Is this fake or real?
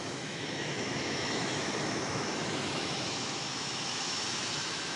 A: fake